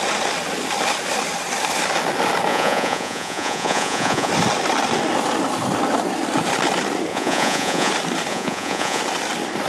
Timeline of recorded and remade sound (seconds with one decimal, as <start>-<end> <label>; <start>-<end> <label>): 0.0-2.5 recorded; 2.5-4.3 remade; 4.3-7.1 recorded; 7.1-7.9 remade; 7.9-8.3 recorded; 8.3-9.0 remade; 9.0-9.7 recorded